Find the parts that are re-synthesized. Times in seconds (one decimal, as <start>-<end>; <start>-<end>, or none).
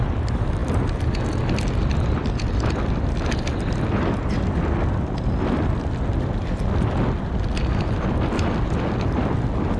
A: none